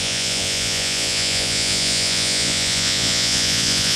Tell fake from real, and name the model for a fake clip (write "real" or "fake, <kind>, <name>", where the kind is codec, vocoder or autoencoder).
fake, vocoder, Vocos